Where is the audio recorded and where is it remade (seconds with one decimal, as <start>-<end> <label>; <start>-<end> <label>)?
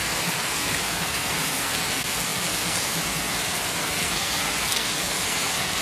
0.0-5.8 remade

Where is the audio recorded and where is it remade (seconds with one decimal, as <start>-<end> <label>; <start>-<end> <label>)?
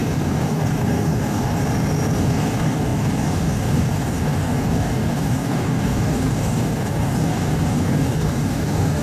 0.0-1.6 remade; 1.6-2.2 recorded; 2.2-9.0 remade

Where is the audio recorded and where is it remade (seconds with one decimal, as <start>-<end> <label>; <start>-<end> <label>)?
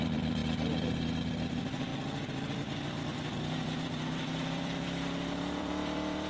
0.0-6.3 remade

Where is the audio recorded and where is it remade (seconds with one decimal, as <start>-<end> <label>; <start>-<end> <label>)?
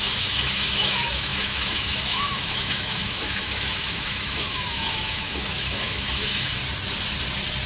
0.0-6.6 remade; 6.6-7.7 recorded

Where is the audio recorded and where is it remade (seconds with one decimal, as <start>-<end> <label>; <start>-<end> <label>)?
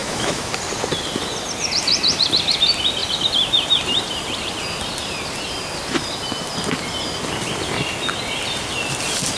0.0-0.5 remade; 0.5-9.4 recorded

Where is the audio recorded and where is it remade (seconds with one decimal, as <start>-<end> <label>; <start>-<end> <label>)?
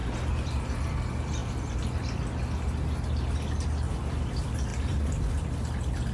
0.0-6.1 recorded